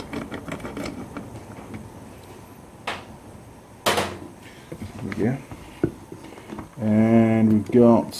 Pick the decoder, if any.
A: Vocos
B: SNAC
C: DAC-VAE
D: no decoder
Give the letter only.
D